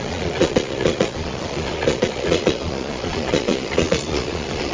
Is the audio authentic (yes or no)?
no